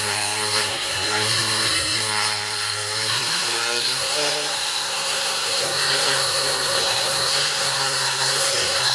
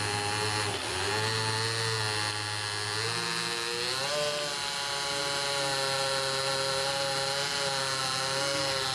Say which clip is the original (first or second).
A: second